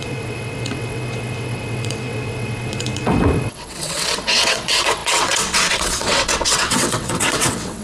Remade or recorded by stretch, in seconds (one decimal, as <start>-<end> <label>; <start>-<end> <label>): 0.0-7.8 remade

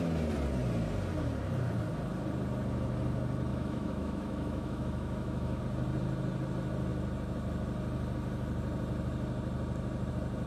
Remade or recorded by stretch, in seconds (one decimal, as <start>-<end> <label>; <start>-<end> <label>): 0.0-3.5 recorded; 3.5-5.6 remade; 5.6-10.5 recorded